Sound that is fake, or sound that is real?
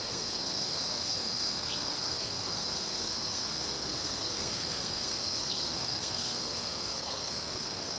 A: fake